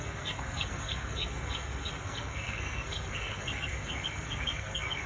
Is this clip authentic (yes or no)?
no